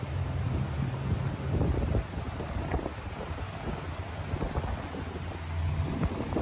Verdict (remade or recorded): recorded